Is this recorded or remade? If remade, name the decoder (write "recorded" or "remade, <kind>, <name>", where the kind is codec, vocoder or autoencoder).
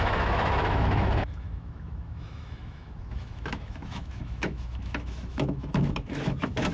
remade, autoencoder, DAC-VAE